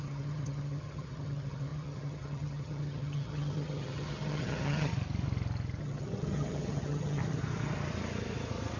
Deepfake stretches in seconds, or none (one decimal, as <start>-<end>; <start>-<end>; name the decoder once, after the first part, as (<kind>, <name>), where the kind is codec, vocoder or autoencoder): 0.0-4.9 (vocoder, HiFi-GAN); 5.8-7.2